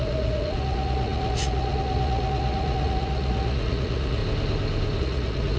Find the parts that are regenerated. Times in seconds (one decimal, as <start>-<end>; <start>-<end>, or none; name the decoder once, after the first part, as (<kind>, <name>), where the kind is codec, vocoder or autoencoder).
0.0-4.2 (vocoder, Vocos); 5.0-5.6